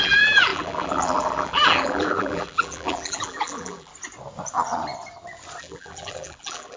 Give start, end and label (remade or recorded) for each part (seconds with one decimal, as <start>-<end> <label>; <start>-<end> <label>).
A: 0.0-3.9 remade; 3.9-5.6 recorded; 5.6-6.8 remade